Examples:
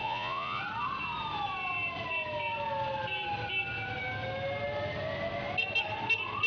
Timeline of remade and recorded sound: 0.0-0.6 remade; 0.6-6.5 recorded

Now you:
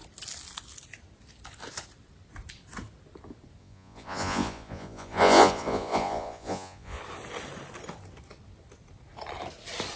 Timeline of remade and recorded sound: 0.0-3.6 recorded; 3.6-7.0 remade; 7.0-10.0 recorded

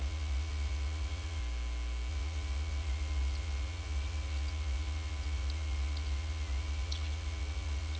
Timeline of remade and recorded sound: 0.0-1.4 remade; 1.4-2.1 recorded; 2.1-8.0 remade

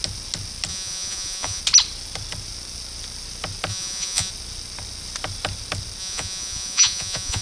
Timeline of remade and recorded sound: 0.0-0.7 recorded; 0.7-1.6 remade; 1.6-3.7 recorded; 3.7-4.3 remade; 4.3-6.0 recorded; 6.0-7.4 remade